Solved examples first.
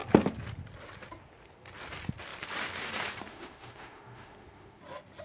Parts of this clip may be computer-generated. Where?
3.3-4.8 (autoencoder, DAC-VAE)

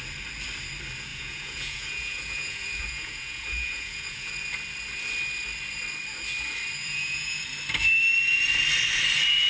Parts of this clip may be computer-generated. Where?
1.1-4.3 (vocoder, Vocos); 6.8-7.4